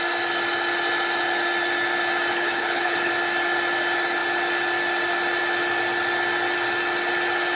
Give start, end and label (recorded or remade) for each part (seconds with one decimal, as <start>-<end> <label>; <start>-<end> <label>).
0.0-2.3 recorded; 2.3-3.1 remade; 3.1-7.6 recorded